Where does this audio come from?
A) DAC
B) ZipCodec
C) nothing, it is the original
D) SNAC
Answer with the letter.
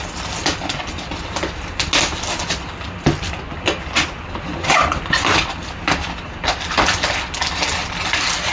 C